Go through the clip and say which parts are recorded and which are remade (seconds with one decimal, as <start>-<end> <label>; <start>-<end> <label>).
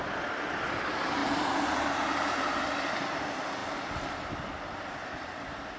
0.0-1.2 recorded; 1.2-2.6 remade; 2.6-5.8 recorded